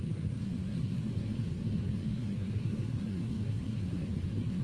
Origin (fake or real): fake